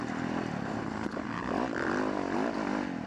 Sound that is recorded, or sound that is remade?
recorded